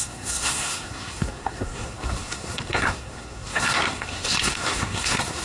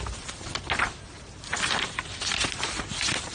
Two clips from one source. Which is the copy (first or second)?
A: first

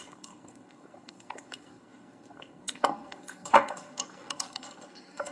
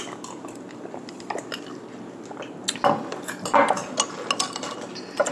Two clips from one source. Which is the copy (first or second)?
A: first